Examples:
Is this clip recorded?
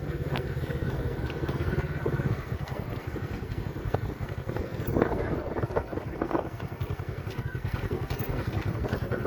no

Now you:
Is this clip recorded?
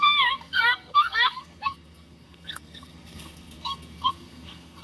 no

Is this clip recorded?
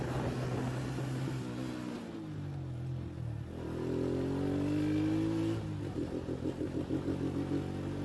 yes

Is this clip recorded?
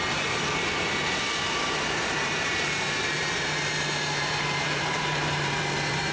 no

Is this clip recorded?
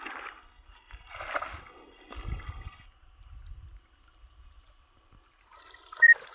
yes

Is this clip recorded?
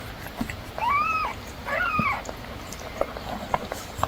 yes